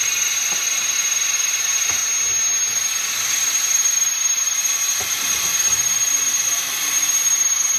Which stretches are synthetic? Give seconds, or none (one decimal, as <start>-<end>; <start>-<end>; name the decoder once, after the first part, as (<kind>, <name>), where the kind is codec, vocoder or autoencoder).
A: 0.0-2.0 (vocoder, BigVGAN v2); 2.7-7.8